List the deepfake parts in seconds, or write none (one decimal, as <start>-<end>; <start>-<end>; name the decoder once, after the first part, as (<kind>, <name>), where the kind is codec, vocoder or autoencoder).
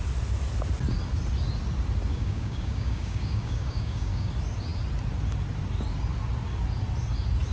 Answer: 2.1-4.3 (codec, DAC)